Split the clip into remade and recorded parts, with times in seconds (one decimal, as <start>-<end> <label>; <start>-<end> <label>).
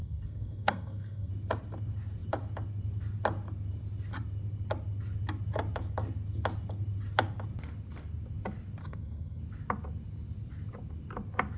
0.0-1.3 remade; 1.3-8.8 recorded; 8.8-9.4 remade; 9.4-11.6 recorded